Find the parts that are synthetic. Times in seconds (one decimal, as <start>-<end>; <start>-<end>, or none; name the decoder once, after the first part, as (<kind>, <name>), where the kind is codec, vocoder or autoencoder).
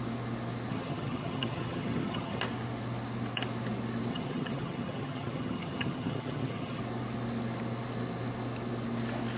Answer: 0.7-2.4 (vocoder, HiFi-GAN); 4.1-6.8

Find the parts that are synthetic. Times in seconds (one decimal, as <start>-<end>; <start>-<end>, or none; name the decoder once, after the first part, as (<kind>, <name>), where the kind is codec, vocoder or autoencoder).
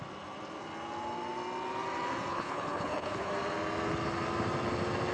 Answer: 2.3-3.3 (codec, HILCodec)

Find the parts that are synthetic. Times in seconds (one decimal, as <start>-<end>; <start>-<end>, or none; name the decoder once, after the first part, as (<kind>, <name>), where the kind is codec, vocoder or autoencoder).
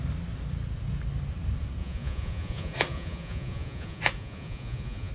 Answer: 1.8-5.1 (vocoder, Vocos)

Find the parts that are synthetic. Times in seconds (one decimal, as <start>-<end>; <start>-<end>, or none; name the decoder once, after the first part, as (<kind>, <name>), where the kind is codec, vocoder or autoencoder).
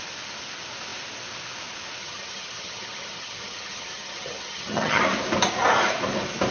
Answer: 2.0-5.0 (vocoder, HiFi-GAN)